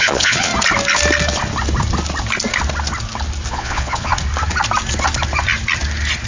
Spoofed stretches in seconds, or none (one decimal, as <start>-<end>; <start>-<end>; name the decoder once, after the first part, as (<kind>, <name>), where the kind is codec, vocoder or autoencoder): 0.0-0.5 (vocoder, Vocos); 3.5-4.1